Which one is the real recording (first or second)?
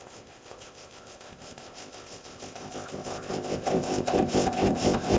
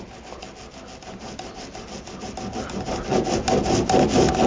second